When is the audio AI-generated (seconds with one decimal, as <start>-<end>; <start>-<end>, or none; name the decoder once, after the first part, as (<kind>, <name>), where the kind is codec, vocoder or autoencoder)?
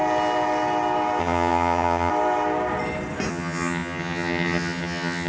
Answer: 1.2-2.1 (vocoder, HiFi-GAN); 3.3-5.3